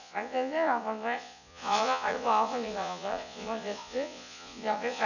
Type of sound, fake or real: fake